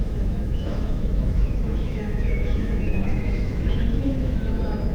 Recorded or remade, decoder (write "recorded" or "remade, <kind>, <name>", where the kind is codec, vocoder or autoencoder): remade, autoencoder, DAC-VAE